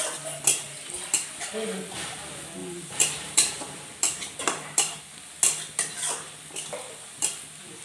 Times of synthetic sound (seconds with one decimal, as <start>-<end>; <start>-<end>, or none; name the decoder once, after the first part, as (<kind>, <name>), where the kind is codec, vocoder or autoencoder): 2.6-5.0 (vocoder, BigVGAN v2)